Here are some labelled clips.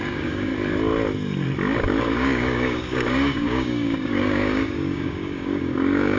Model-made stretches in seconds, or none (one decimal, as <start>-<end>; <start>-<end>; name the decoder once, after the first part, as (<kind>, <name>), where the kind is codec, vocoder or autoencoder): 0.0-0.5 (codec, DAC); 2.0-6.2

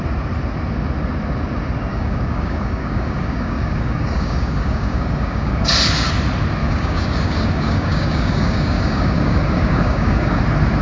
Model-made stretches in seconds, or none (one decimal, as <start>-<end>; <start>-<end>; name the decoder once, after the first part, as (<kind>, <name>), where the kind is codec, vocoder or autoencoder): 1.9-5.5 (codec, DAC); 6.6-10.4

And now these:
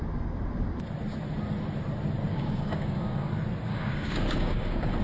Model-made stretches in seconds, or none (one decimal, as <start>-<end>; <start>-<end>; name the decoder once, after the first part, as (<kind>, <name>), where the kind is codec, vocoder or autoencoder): 2.3-3.3 (codec, DAC); 3.7-5.0

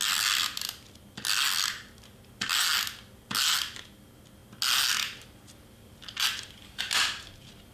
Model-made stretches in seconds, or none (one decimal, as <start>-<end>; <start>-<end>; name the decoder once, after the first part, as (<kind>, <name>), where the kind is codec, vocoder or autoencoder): none

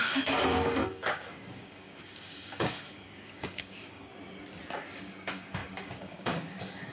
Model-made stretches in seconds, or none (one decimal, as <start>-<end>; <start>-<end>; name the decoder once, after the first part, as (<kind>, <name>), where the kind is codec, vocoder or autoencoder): 0.0-4.1 (codec, DAC); 4.7-6.9

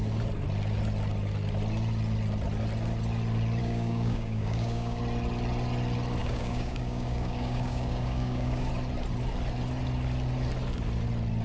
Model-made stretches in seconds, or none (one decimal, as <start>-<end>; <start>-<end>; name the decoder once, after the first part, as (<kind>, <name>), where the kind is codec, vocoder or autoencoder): 3.6-5.0 (codec, DAC); 6.2-8.7

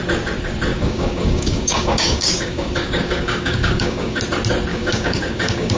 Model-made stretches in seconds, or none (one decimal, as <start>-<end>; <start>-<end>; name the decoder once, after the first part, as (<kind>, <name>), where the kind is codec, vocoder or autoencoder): 0.7-4.2 (codec, DAC); 4.7-5.8

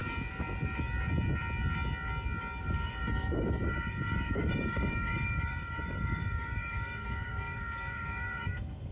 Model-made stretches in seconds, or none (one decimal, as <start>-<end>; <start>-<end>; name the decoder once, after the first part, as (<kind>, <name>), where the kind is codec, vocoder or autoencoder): 2.6-8.9 (codec, DAC)